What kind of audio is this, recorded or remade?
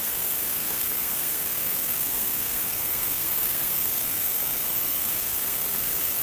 remade